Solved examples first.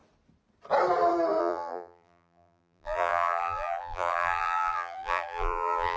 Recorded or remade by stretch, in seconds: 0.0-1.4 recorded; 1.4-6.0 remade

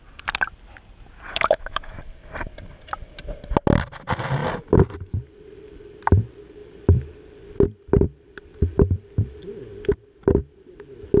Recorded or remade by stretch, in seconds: 0.0-1.3 recorded; 1.3-2.0 remade; 2.0-11.2 recorded